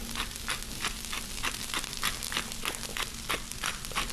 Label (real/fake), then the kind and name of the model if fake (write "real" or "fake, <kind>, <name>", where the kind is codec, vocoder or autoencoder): real